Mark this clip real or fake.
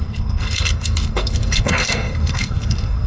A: fake